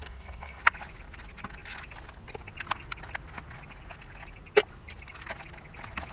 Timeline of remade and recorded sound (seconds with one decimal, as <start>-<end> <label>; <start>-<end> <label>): 0.0-0.6 remade; 0.6-6.1 recorded